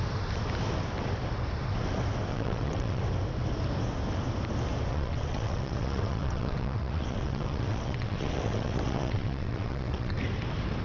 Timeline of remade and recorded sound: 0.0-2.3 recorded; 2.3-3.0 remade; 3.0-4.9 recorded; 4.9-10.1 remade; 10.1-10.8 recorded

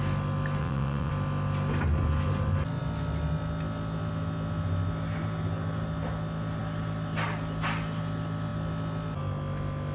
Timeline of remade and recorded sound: 0.0-0.6 recorded; 0.6-1.1 remade; 1.1-9.9 recorded

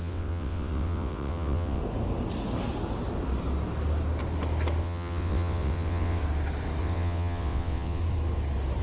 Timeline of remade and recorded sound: 0.0-1.8 remade; 1.8-4.8 recorded; 4.8-6.2 remade; 6.2-6.8 recorded; 6.8-8.0 remade; 8.0-8.8 recorded